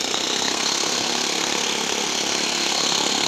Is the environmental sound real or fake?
fake